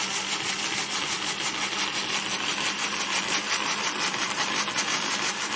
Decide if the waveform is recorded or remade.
recorded